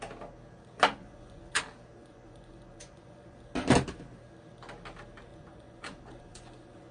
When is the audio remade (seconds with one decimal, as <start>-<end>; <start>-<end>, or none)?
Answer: 1.0-1.6; 2.0-3.4; 5.3-6.9